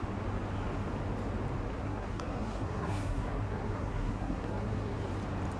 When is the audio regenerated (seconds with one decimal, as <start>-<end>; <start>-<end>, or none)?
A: 1.7-5.1